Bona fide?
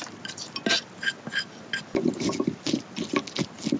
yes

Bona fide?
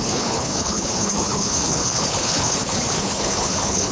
no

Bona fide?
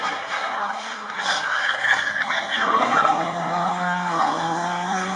no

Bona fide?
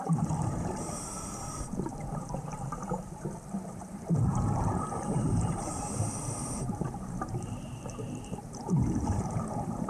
no